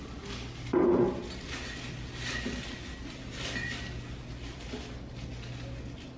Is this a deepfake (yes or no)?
no